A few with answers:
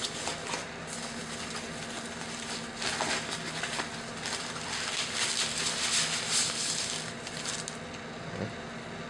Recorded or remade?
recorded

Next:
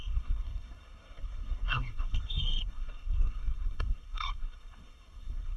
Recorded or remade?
remade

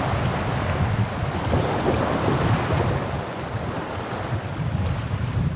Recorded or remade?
recorded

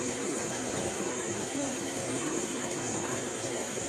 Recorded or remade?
remade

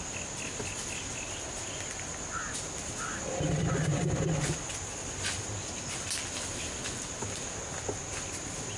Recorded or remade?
recorded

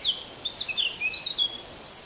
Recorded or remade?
recorded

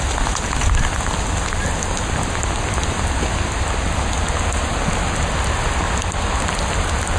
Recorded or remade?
recorded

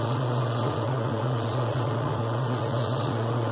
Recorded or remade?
remade